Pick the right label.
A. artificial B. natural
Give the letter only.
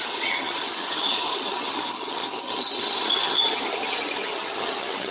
A